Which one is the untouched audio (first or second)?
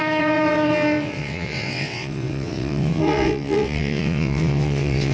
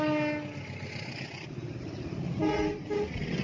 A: second